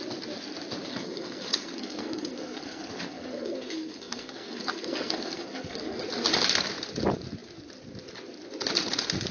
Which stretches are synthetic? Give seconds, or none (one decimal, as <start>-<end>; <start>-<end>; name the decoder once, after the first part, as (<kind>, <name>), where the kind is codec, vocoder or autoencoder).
0.9-6.0 (codec, SNAC)